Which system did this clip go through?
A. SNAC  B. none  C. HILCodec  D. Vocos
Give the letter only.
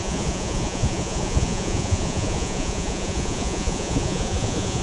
D